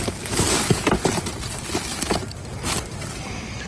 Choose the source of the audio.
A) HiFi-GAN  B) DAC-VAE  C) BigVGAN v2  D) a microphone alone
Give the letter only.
D